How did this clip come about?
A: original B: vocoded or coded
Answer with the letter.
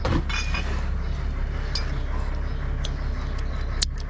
A